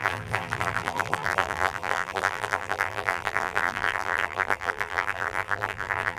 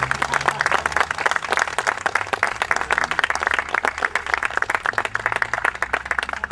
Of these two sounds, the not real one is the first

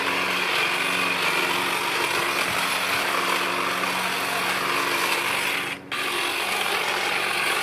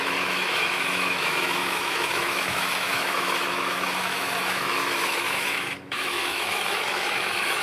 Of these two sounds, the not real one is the second